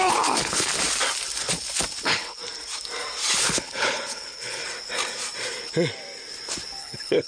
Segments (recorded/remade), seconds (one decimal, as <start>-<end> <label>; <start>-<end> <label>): 0.0-0.7 remade; 0.7-2.0 recorded; 2.0-2.4 remade; 2.4-3.3 recorded; 3.3-4.6 remade; 4.6-6.8 recorded; 6.8-7.3 remade